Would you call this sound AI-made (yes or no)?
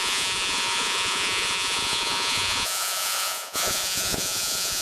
yes